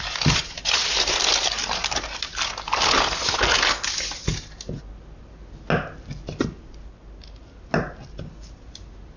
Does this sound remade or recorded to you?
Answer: recorded